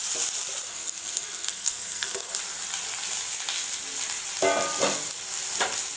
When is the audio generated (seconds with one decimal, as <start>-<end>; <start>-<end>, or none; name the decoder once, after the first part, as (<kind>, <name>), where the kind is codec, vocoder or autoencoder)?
0.7-2.3 (codec, SNAC)

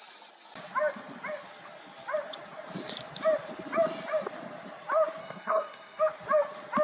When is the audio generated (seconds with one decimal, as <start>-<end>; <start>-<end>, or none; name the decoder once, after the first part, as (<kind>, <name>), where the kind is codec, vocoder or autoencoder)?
5.2-6.0 (codec, SNAC)

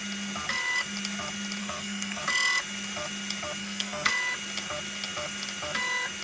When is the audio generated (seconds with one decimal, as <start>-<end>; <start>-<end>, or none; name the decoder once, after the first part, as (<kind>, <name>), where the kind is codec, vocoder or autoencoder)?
1.6-2.2 (codec, SNAC); 3.6-4.1

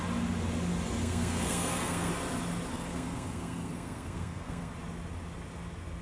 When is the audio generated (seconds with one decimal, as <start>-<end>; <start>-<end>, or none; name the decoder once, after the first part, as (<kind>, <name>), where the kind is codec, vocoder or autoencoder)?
1.0-2.1 (codec, SNAC); 2.7-4.7

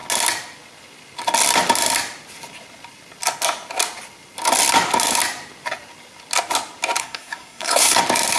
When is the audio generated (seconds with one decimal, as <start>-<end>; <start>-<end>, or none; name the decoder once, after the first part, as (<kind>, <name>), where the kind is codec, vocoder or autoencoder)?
7.0-8.0 (codec, SNAC)